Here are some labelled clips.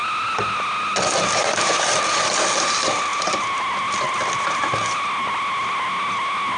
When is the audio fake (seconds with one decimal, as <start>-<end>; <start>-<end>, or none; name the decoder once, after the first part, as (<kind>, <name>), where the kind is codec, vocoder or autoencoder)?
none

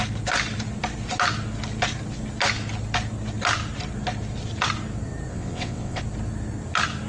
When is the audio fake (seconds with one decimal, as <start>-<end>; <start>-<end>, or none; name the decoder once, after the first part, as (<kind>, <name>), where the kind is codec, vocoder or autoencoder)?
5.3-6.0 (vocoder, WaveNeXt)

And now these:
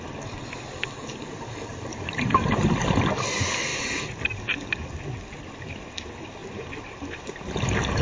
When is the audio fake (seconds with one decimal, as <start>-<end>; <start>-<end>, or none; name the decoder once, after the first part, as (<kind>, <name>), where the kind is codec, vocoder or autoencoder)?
1.9-2.7 (vocoder, BigVGAN v2); 3.7-4.4

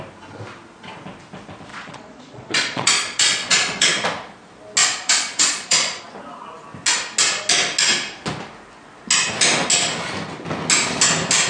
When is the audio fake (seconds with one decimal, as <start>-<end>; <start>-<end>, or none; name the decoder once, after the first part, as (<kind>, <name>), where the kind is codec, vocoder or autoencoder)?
1.7-3.9 (vocoder, Vocos); 4.8-6.0

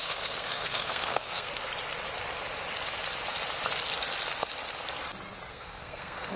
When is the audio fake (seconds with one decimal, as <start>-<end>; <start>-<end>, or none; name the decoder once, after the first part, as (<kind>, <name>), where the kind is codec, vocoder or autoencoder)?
0.0-1.7 (codec, SNAC); 5.5-6.4